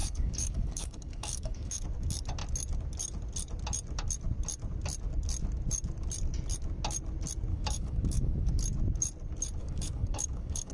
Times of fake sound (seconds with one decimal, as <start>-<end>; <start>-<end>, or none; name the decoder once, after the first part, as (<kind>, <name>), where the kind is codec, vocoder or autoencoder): 0.0-1.8 (codec, DAC); 7.5-8.5; 9.6-10.7